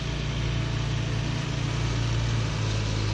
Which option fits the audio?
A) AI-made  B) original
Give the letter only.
B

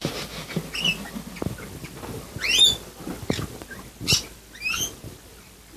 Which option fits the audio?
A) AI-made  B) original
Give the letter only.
B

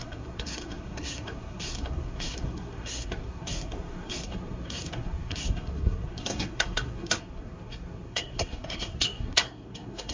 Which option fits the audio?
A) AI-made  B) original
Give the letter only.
A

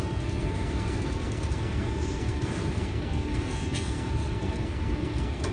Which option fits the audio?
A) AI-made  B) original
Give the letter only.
A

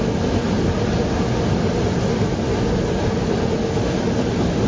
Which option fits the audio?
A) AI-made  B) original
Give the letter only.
B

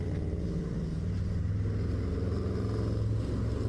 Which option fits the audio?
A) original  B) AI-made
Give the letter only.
A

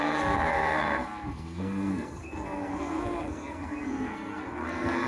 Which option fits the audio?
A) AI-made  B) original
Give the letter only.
A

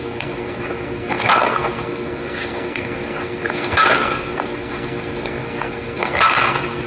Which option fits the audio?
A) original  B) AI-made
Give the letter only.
B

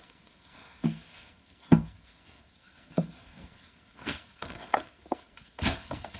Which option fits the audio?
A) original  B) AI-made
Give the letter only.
B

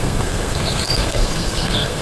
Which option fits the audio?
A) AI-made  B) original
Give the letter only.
A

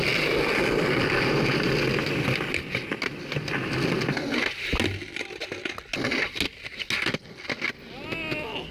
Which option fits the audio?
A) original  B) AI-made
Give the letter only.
A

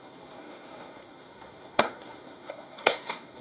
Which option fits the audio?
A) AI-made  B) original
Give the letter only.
A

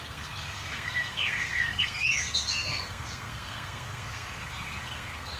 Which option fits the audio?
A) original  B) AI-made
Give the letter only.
B